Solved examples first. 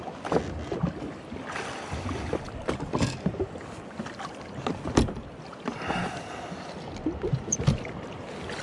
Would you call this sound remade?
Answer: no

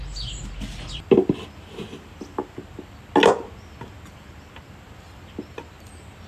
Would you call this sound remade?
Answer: no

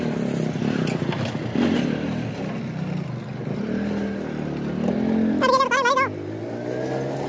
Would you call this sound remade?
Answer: no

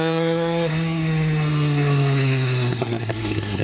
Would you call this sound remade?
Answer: yes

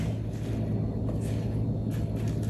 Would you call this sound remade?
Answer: no